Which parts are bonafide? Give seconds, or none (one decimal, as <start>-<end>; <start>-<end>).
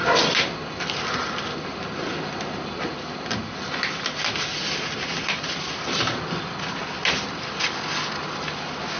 0.0-9.0